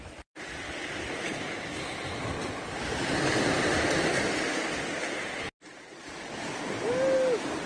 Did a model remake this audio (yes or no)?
no